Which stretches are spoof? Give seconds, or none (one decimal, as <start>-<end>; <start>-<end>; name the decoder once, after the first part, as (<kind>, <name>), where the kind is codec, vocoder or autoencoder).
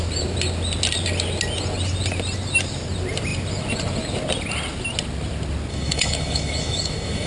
5.7-7.3 (autoencoder, DAC-VAE)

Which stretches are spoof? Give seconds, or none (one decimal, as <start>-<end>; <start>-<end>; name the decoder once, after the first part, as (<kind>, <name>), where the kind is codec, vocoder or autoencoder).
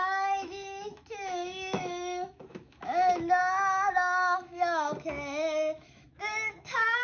0.0-3.4 (autoencoder, DAC-VAE); 3.9-7.0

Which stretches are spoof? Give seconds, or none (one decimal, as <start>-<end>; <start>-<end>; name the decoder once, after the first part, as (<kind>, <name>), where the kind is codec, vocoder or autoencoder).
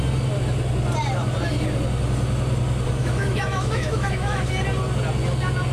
3.0-4.5 (autoencoder, DAC-VAE)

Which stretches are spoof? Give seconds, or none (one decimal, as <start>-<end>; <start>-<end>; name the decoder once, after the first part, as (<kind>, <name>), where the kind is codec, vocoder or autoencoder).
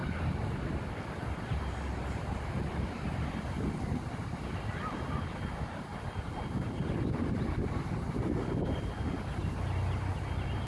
none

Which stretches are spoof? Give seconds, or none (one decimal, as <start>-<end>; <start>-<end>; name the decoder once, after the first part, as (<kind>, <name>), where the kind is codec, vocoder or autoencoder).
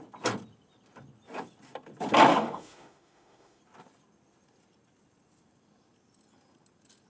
2.3-3.6 (autoencoder, DAC-VAE)